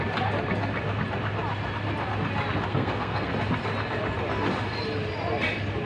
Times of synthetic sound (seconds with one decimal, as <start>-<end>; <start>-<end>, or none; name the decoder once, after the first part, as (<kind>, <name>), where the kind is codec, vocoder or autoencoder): 2.7-3.3 (codec, SNAC)